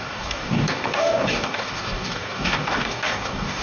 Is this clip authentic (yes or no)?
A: no